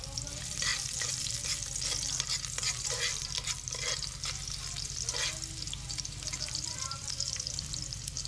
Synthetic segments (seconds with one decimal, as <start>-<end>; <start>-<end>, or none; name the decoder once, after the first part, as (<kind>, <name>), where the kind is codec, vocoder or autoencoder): 0.0-1.6 (vocoder, BigVGAN v2); 6.5-8.3